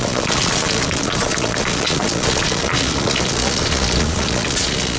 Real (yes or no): no